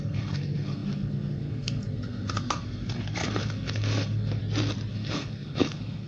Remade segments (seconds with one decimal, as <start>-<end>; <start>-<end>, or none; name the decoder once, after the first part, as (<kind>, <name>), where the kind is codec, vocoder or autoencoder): 0.0-4.4 (codec, SNAC); 4.9-6.1